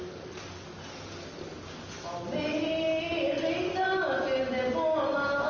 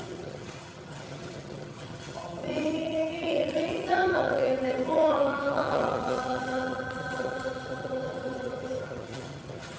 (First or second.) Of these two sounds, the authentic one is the first